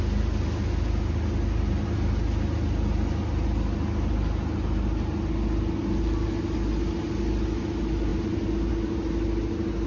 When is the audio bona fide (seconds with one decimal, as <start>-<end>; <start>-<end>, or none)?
0.0-9.9